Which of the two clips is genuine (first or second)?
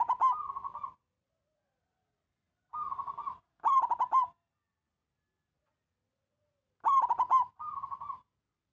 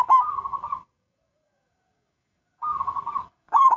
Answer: first